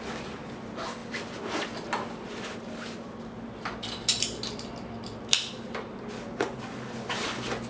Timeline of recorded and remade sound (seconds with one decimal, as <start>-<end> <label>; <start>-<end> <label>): 0.0-7.7 recorded